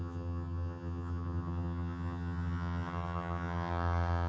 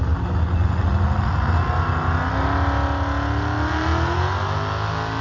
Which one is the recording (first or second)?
second